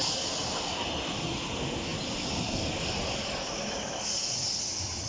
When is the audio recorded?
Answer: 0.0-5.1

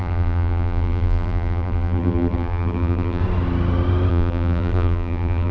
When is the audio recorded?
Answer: 3.2-4.1